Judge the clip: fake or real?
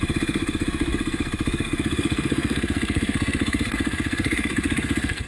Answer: fake